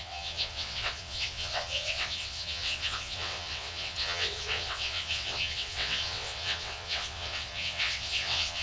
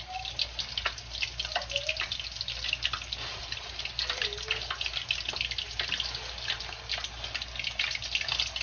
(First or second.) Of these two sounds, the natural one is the second